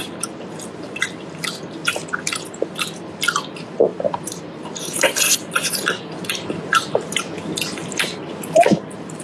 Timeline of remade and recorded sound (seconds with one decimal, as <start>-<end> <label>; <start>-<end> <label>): 0.0-3.9 recorded; 3.9-5.2 remade; 5.2-6.7 recorded; 6.7-7.2 remade; 7.2-9.2 recorded